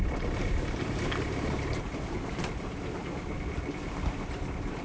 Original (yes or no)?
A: yes